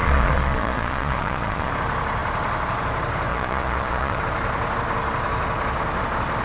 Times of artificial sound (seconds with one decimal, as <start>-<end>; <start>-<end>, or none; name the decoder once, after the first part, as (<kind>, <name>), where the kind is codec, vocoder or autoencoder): 0.0-1.7 (vocoder, Vocos); 3.3-4.2